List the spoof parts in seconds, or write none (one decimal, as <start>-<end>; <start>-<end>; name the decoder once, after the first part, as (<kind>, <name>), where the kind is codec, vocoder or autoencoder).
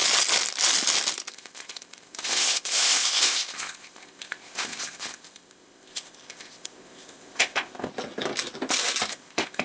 1.3-7.9 (codec, ZipCodec); 9.1-9.6